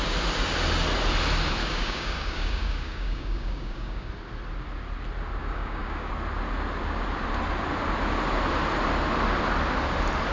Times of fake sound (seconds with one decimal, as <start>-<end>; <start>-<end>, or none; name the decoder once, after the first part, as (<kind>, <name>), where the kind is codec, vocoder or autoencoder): 1.6-4.1 (codec, DAC); 5.4-6.1